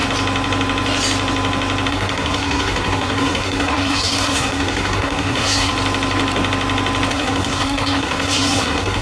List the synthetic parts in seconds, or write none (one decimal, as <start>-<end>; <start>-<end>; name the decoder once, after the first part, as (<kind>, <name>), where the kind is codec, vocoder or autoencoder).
1.9-5.7 (codec, SNAC); 7.1-9.0